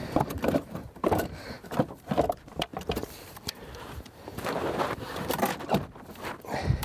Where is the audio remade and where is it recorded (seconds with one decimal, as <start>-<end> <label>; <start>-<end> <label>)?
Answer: 0.0-2.0 remade; 2.0-2.7 recorded; 2.7-5.3 remade; 5.3-6.8 recorded